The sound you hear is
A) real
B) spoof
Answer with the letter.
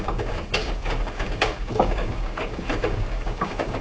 B